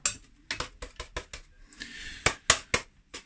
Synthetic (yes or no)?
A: no